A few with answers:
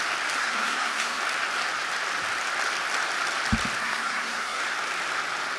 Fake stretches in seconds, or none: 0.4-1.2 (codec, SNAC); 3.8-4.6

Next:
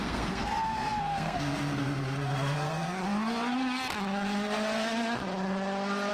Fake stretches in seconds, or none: 0.0-3.0 (codec, SNAC)

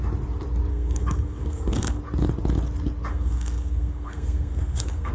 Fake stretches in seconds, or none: 0.7-2.0 (codec, SNAC); 3.1-5.1